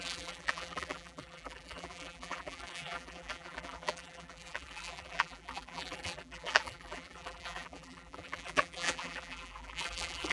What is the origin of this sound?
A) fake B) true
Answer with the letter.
A